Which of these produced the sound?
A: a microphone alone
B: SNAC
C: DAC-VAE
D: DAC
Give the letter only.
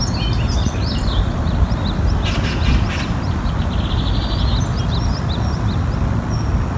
A